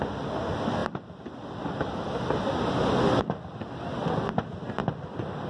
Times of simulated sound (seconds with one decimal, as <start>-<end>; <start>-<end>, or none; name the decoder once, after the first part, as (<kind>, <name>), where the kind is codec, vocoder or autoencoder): none